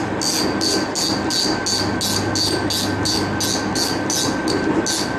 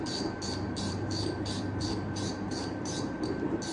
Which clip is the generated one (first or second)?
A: second